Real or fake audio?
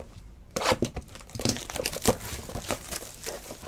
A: fake